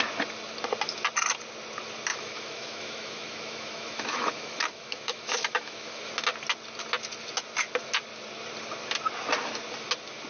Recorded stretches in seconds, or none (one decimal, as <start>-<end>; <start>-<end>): 0.0-2.1; 6.1-10.3

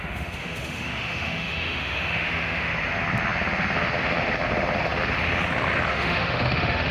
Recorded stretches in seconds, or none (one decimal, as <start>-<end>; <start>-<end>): 2.7-5.9

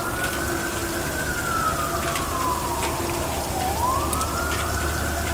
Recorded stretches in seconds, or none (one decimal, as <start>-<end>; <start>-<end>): 0.0-5.3

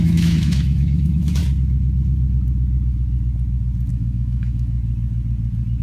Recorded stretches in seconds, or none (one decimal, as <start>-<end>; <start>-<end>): 1.4-3.9; 4.8-5.8

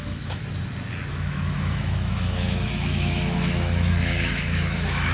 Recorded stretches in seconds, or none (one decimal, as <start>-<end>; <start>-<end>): 0.4-1.1

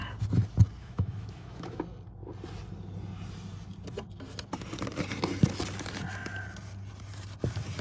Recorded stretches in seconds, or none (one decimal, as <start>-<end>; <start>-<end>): 0.0-0.8; 1.8-7.8